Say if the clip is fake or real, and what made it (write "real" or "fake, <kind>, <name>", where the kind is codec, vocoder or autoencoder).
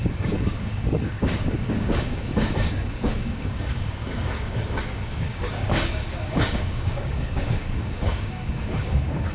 fake, codec, DAC